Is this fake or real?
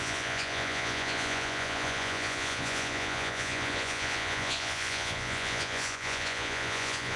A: fake